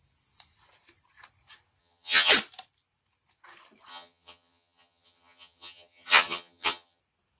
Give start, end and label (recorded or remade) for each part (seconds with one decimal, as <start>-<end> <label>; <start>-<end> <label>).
0.0-1.8 recorded; 1.8-2.3 remade; 2.3-3.9 recorded; 3.9-7.0 remade; 7.0-7.4 recorded